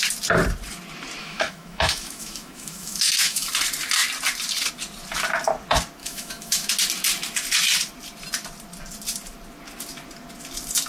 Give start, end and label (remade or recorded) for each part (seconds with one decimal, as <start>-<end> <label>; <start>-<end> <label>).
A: 0.0-1.2 recorded; 1.2-3.5 remade; 3.5-6.0 recorded; 6.0-6.7 remade; 6.7-10.9 recorded